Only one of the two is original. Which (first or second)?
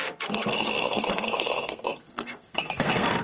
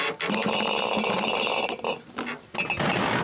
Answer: second